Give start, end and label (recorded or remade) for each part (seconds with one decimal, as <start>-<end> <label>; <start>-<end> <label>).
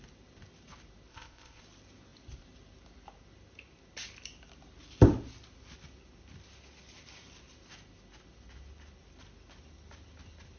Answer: 0.0-1.1 recorded; 1.1-1.6 remade; 1.6-10.6 recorded